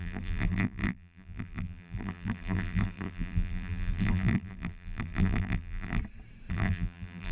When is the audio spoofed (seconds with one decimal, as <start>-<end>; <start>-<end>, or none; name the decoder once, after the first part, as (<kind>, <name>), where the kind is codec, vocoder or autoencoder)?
0.0-6.0 (vocoder, BigVGAN v2); 6.5-7.3